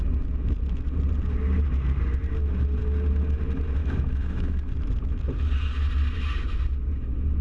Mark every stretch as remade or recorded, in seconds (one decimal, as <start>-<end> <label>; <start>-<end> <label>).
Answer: 0.0-3.8 recorded; 3.8-4.7 remade; 4.7-7.4 recorded